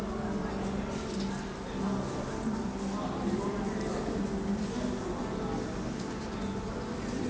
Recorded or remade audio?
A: recorded